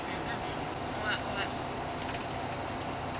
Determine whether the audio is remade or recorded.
recorded